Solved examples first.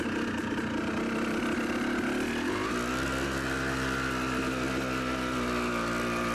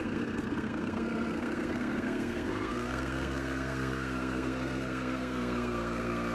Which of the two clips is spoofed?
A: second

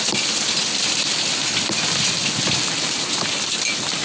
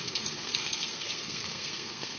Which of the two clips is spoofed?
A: second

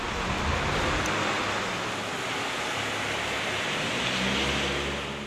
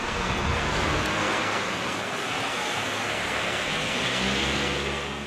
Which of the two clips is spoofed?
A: second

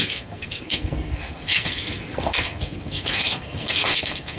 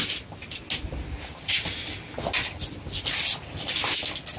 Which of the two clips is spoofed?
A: first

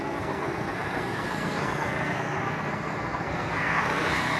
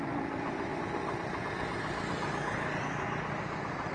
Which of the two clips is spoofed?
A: first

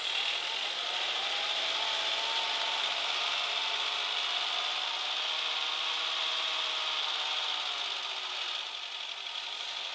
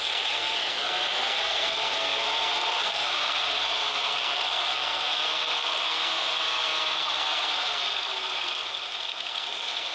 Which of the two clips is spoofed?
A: second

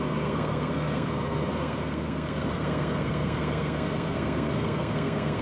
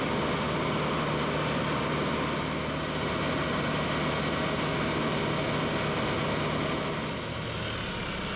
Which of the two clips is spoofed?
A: first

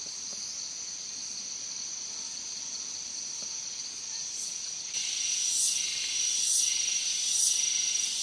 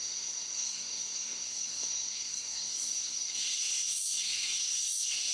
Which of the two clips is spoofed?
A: second